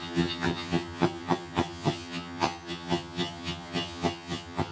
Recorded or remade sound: remade